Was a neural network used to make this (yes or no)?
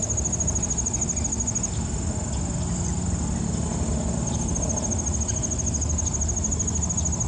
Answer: no